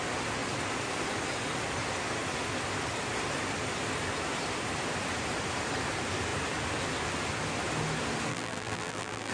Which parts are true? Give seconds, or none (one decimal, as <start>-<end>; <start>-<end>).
0.0-8.3